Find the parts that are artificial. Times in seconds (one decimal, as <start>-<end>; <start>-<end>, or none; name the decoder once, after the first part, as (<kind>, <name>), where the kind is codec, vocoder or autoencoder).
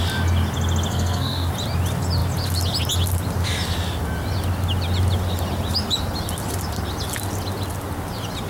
0.9-1.5 (codec, SNAC)